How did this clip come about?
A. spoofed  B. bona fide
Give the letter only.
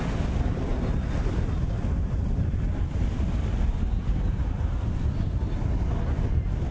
B